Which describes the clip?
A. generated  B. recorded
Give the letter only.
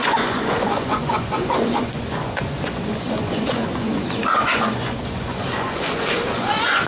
A